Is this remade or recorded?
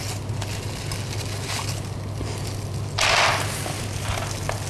recorded